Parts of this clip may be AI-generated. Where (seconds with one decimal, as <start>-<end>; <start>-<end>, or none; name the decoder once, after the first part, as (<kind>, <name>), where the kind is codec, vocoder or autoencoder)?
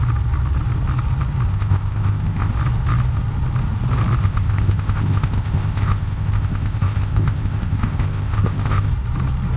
1.5-2.5 (codec, ZipCodec); 4.2-8.9